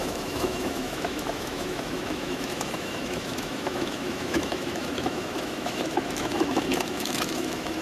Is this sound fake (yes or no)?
yes